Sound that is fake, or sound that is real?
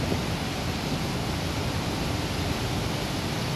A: real